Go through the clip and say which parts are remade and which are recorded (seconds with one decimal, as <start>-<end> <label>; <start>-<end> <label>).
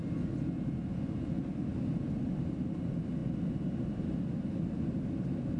0.0-5.6 recorded